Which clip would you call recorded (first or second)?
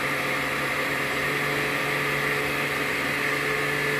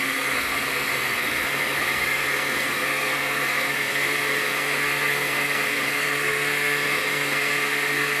first